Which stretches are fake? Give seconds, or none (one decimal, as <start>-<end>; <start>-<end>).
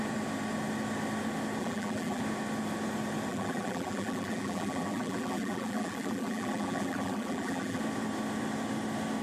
1.6-2.2; 3.3-7.8